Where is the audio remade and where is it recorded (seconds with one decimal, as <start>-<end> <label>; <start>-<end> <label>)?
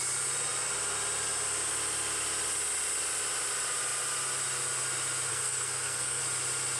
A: 0.0-5.3 recorded; 5.3-6.2 remade; 6.2-6.8 recorded